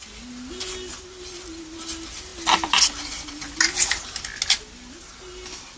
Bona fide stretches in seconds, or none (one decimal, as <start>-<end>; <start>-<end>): 0.0-5.8